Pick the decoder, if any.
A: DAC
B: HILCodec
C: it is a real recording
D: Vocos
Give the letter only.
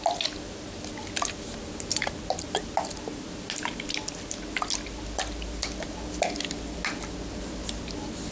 C